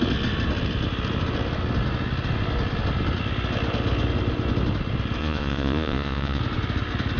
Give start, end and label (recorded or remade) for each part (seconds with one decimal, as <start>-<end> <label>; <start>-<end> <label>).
0.0-5.2 recorded; 5.2-6.4 remade; 6.4-7.2 recorded